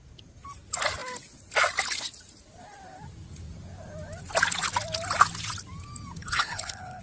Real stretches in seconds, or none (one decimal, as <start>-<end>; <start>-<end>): 0.0-6.2